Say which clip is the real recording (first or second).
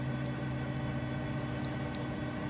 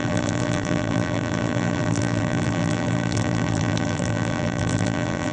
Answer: first